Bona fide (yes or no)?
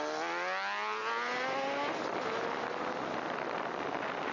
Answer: yes